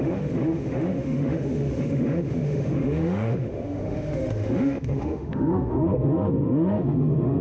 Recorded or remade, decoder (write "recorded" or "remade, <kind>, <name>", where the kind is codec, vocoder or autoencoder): remade, autoencoder, DAC-VAE